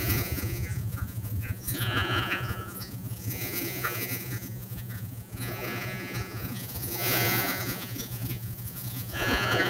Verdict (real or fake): fake